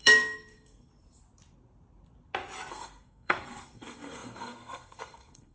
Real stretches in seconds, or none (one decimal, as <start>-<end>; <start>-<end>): 0.9-2.7